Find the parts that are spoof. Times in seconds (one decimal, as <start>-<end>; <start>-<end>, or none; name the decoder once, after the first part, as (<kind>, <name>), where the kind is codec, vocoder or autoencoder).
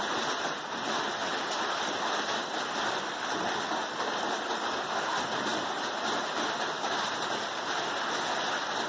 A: 2.4-3.7 (vocoder, BigVGAN v2)